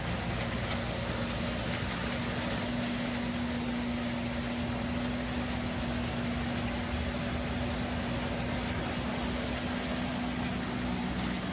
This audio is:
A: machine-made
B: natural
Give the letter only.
B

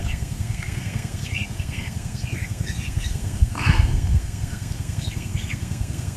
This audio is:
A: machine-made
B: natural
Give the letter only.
A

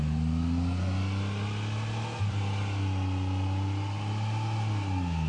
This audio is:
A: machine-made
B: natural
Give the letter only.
B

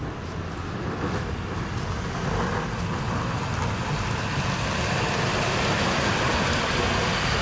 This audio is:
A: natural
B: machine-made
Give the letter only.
A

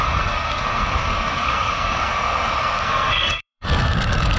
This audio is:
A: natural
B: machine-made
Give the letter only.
B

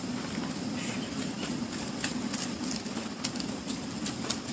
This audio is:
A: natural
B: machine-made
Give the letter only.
A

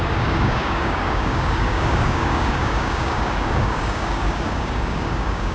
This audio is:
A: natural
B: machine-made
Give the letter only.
B